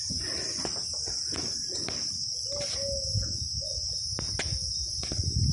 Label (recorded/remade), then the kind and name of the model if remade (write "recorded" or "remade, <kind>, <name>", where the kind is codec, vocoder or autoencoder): recorded